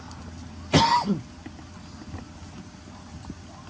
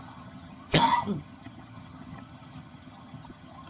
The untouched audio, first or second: first